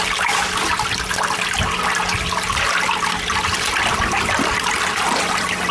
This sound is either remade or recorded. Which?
recorded